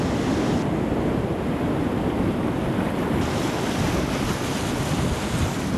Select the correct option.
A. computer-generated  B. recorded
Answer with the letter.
B